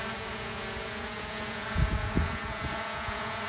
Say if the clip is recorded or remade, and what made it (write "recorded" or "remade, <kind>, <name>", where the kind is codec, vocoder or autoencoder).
remade, vocoder, Vocos